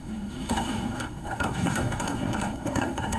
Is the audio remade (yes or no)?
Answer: yes